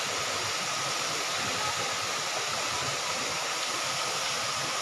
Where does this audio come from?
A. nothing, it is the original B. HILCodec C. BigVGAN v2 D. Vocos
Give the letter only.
A